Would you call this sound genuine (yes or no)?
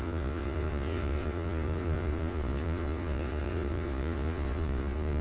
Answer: no